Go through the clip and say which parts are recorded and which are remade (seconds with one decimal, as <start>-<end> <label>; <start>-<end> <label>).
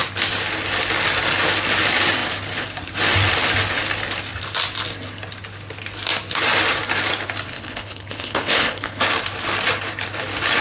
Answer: 0.0-7.5 recorded; 7.5-9.0 remade; 9.0-10.6 recorded